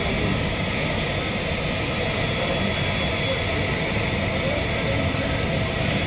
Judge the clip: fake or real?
real